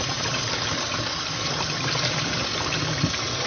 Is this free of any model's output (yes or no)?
yes